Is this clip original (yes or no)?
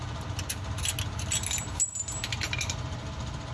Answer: yes